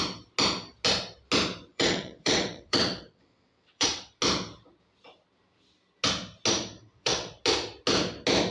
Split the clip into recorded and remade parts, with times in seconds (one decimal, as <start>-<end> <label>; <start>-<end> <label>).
0.0-1.7 recorded; 1.7-4.1 remade; 4.1-6.8 recorded; 6.8-7.4 remade; 7.4-8.5 recorded